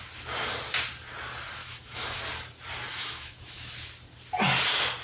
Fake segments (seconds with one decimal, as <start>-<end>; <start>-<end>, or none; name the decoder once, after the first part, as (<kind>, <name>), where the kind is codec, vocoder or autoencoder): 1.6-2.2 (autoencoder, DAC-VAE); 2.9-3.7